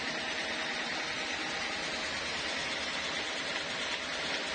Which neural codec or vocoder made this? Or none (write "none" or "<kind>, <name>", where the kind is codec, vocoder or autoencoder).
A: none